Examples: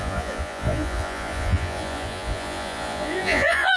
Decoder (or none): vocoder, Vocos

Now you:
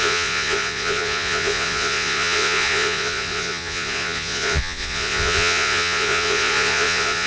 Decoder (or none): vocoder, Vocos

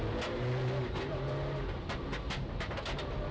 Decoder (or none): none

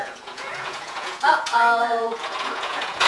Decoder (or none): vocoder, Vocos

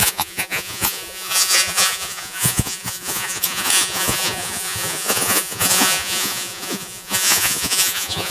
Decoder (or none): vocoder, Vocos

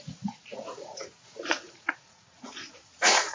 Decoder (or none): vocoder, Vocos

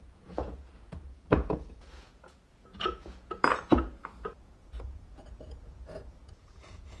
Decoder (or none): vocoder, Vocos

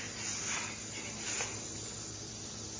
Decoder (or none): none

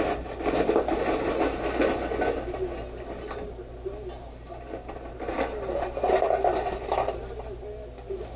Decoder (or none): none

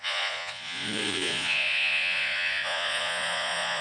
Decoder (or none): vocoder, Vocos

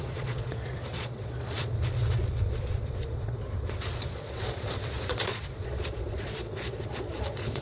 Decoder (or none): vocoder, Vocos